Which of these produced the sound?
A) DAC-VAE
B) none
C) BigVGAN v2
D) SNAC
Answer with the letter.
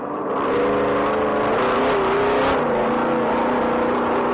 B